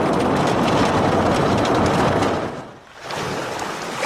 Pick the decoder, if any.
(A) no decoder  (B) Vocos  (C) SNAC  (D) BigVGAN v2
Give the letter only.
A